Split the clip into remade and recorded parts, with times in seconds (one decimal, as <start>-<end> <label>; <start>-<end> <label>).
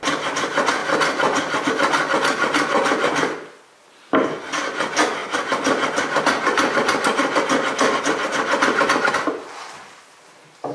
0.0-10.7 recorded